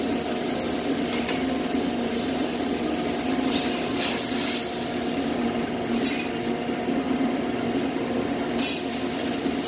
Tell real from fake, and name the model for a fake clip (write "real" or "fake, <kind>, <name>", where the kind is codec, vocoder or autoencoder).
real